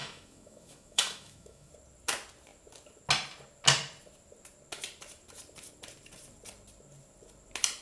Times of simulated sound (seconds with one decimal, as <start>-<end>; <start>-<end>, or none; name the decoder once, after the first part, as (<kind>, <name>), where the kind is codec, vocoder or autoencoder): 0.0-1.7 (autoencoder, DAC-VAE)